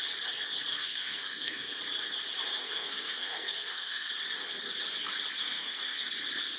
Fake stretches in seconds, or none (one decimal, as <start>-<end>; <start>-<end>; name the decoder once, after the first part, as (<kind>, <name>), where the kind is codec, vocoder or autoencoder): 0.7-1.8 (codec, SNAC); 2.6-4.1; 5.4-6.1